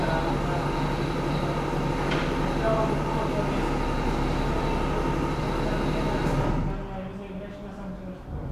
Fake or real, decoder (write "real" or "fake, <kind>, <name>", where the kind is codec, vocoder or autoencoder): real